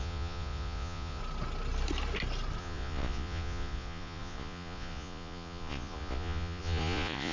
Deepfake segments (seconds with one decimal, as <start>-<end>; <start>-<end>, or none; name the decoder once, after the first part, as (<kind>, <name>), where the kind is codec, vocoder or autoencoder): 0.0-1.2 (vocoder, Vocos); 2.6-7.3